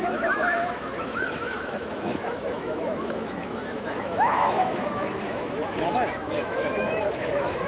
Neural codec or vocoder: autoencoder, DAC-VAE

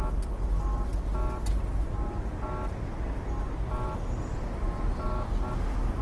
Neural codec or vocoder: none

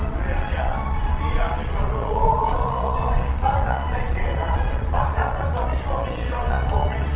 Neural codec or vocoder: vocoder, Vocos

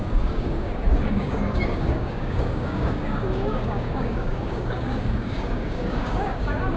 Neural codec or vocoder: codec, DAC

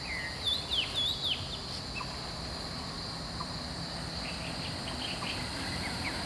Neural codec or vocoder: none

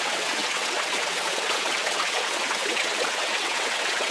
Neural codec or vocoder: vocoder, WaveNeXt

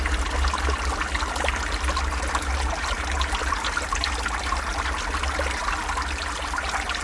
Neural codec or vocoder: none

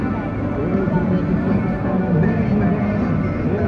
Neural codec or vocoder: none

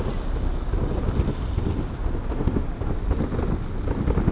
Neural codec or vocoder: none